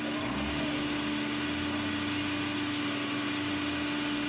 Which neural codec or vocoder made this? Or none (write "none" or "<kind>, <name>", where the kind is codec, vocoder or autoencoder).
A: none